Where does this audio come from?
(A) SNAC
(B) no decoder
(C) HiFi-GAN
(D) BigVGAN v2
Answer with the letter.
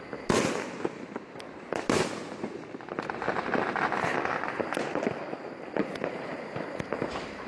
B